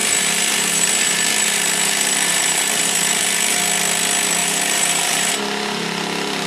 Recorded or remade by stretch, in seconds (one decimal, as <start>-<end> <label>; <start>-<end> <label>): 0.0-3.6 remade; 3.6-4.4 recorded; 4.4-5.3 remade; 5.3-6.5 recorded